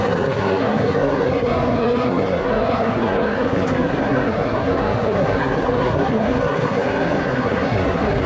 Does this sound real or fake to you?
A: fake